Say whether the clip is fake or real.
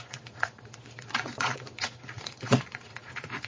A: fake